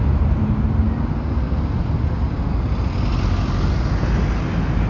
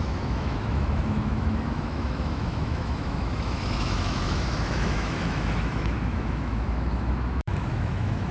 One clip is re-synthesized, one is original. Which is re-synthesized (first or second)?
second